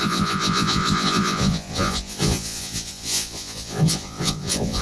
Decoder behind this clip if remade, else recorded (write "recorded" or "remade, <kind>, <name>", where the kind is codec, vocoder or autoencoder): remade, vocoder, Vocos